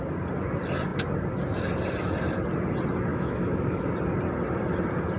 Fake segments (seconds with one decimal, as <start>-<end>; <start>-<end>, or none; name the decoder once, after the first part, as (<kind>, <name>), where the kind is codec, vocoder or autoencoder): 3.1-3.9 (autoencoder, DAC-VAE)